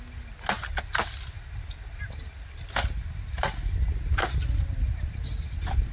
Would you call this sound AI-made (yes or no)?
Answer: no